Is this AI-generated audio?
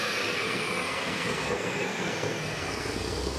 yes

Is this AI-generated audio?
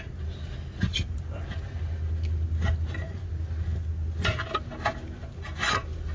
no